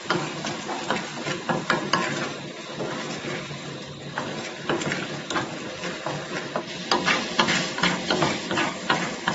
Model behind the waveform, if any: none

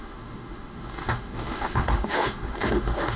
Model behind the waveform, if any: autoencoder, DAC-VAE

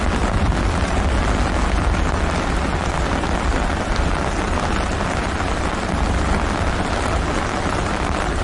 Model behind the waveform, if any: none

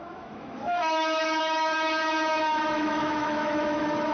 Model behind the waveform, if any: autoencoder, DAC-VAE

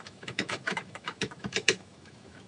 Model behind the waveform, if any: autoencoder, DAC-VAE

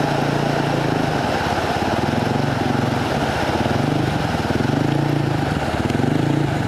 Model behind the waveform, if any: none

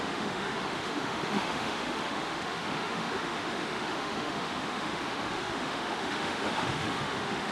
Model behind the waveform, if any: autoencoder, DAC-VAE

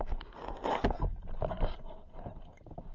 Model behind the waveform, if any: none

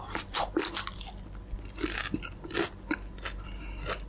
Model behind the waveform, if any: none